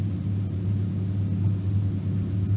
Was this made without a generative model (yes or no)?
yes